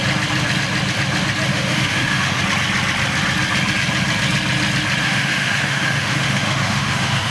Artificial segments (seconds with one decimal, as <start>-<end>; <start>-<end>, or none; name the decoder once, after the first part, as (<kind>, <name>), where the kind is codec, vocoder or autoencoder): 1.5-2.4 (autoencoder, DAC-VAE); 5.0-7.3